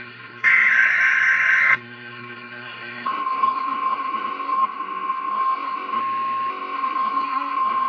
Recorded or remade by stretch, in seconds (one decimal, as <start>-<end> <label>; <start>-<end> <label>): 0.0-6.0 remade; 6.0-6.5 recorded; 6.5-7.9 remade